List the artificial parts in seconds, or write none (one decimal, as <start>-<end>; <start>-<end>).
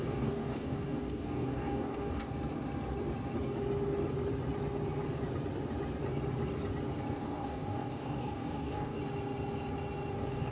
0.0-2.3; 7.1-9.0; 10.1-10.5